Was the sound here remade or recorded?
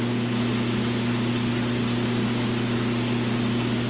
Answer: recorded